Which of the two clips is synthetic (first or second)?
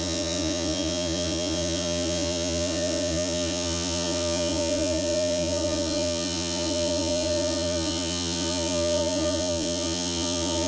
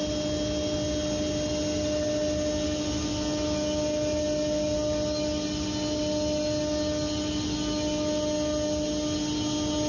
first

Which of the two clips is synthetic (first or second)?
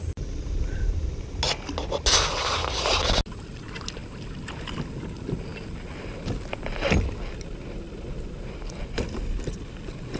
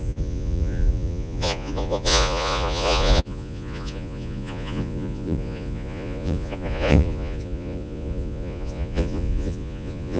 second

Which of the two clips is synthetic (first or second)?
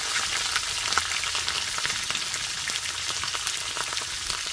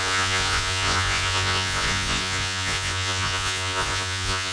second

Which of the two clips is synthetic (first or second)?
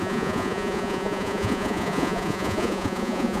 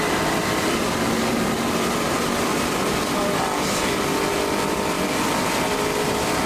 first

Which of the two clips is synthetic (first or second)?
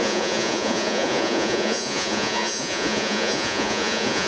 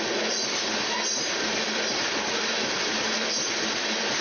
first